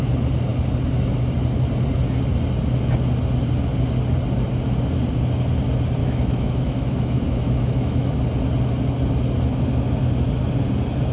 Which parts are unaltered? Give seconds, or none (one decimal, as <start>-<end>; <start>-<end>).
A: 0.0-6.0; 8.1-11.1

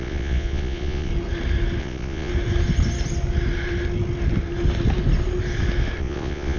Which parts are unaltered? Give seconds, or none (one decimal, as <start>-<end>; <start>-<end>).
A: 1.1-1.8; 2.3-6.0